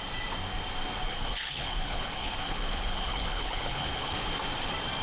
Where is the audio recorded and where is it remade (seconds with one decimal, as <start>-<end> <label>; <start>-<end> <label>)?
0.0-1.1 recorded; 1.1-4.1 remade; 4.1-5.0 recorded